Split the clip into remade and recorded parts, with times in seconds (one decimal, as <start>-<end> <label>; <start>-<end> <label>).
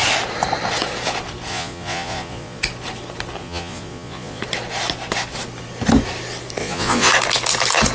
0.0-1.5 recorded; 1.5-2.6 remade; 2.6-3.4 recorded; 3.4-4.4 remade; 4.4-6.6 recorded; 6.6-7.1 remade; 7.1-7.9 recorded